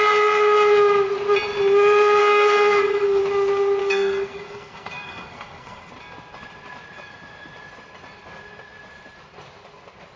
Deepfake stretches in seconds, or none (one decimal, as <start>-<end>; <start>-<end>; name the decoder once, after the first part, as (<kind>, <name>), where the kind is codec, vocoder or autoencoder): 2.2-3.2 (codec, SNAC); 3.8-5.9